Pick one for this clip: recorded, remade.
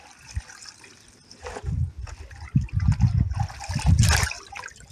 recorded